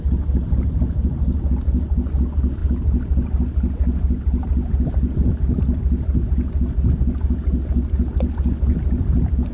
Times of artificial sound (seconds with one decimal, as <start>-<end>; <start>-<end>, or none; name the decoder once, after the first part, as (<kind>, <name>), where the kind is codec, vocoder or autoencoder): none